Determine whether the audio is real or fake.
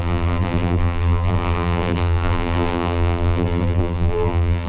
fake